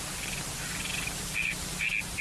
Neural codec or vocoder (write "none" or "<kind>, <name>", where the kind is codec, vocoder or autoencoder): none